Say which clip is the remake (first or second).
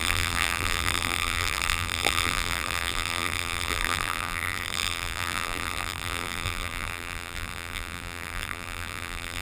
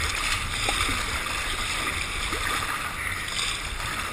first